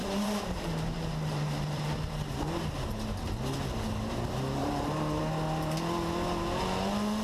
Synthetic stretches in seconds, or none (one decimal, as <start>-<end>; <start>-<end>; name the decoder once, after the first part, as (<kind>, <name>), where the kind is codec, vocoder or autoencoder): 0.0-2.1 (vocoder, BigVGAN v2); 4.6-5.2